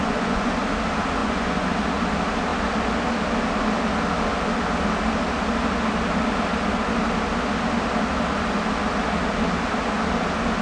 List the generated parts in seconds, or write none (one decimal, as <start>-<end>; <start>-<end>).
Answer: 0.0-0.6; 1.2-1.7